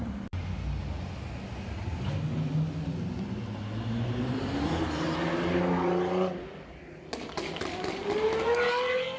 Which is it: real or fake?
real